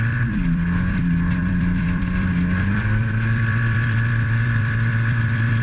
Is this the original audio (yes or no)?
no